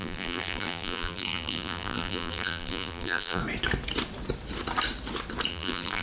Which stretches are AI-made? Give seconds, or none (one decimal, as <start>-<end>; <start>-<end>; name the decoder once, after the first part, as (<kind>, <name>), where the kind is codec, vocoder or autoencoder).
0.0-3.4 (vocoder, BigVGAN v2); 5.5-6.0